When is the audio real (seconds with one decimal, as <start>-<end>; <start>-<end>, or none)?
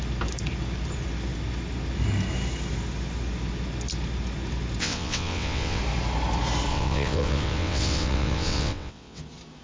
0.0-4.8; 5.8-6.7; 9.2-9.6